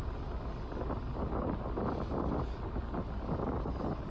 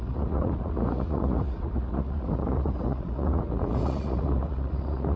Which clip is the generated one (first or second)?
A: second